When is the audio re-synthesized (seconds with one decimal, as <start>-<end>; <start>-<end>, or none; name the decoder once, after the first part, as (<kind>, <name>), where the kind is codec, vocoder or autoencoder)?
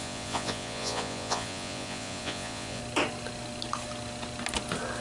0.0-2.8 (vocoder, Vocos)